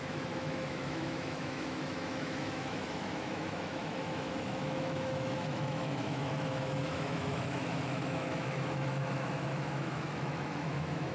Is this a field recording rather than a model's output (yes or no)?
no